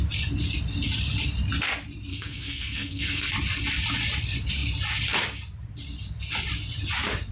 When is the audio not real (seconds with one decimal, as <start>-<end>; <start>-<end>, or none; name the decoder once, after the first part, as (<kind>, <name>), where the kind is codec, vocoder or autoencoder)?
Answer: 2.1-3.3 (codec, SNAC)